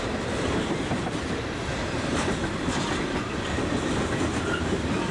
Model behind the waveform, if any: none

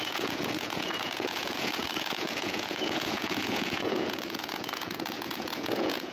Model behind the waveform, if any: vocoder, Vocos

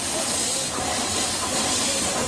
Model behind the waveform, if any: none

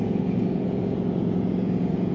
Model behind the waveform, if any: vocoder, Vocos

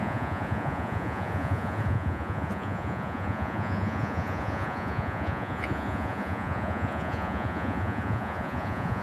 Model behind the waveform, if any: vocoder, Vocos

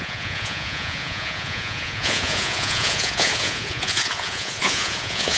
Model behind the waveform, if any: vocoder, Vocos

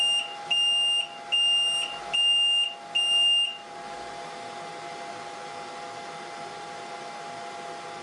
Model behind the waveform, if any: none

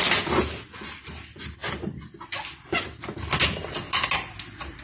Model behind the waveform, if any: none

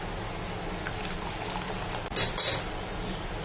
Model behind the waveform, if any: none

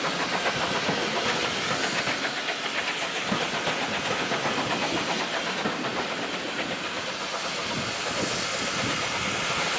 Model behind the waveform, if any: none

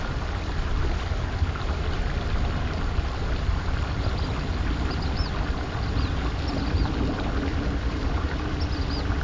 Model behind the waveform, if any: none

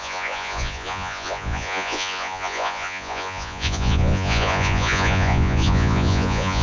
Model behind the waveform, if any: vocoder, Vocos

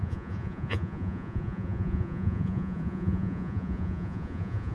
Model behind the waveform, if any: vocoder, Vocos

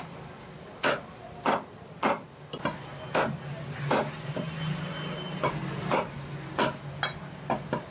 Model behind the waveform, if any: none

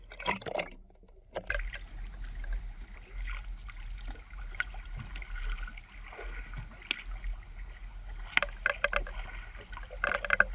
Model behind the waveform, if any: none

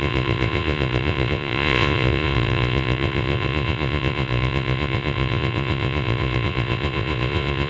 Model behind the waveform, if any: vocoder, Vocos